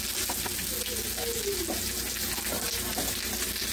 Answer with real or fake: real